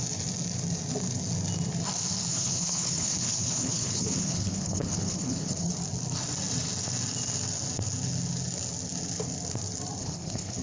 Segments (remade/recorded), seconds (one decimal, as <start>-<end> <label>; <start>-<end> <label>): 0.0-2.3 recorded; 2.3-5.7 remade; 5.7-10.0 recorded; 10.0-10.6 remade